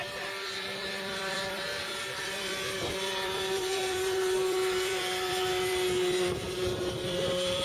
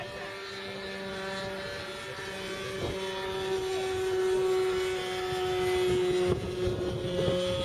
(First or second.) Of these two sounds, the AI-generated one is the first